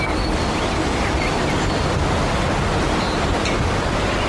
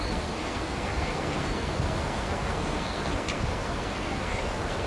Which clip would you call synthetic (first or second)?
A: second